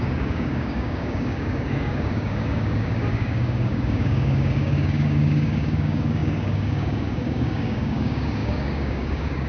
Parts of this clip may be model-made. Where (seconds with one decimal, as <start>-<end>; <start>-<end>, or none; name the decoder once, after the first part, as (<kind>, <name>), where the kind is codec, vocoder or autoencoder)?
0.0-9.5 (codec, DAC)